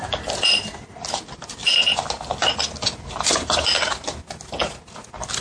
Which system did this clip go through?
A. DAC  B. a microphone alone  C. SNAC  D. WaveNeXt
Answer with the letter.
B